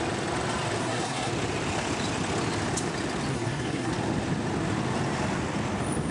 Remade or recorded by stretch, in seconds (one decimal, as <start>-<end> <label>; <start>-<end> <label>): 0.0-0.8 recorded; 0.8-1.3 remade; 1.3-3.3 recorded; 3.3-3.9 remade; 3.9-6.1 recorded